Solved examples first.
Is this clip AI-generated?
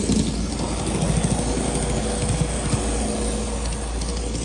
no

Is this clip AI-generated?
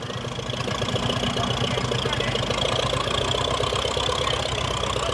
no